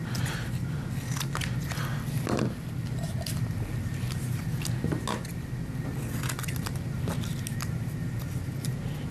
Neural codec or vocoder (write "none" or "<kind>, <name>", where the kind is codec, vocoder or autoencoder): none